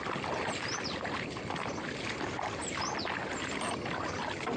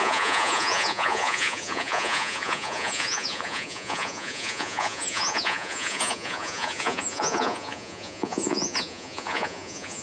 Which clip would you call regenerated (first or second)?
second